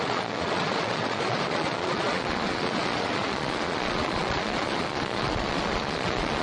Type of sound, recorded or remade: remade